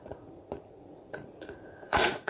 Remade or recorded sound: remade